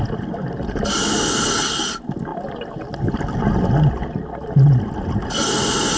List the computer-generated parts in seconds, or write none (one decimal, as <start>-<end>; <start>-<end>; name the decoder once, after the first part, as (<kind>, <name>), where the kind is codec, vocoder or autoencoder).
none